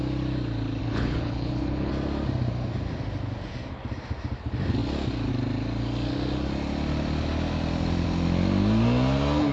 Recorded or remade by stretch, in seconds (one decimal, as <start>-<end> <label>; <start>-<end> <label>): 0.0-0.8 recorded; 0.8-1.9 remade; 1.9-9.5 recorded